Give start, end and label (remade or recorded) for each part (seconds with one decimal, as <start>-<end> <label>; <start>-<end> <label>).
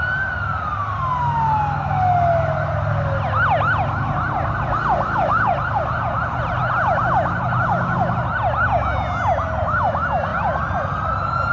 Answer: 0.0-11.5 recorded